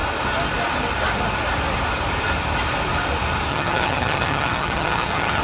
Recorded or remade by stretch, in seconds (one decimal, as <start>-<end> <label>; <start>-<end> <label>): 0.0-3.5 recorded; 3.5-5.4 remade

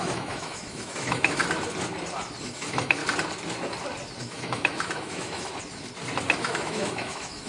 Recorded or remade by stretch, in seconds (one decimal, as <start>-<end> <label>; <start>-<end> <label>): 0.0-1.4 remade; 1.4-2.4 recorded; 2.4-3.0 remade; 3.0-4.2 recorded; 4.2-5.5 remade; 5.5-6.4 recorded; 6.4-7.5 remade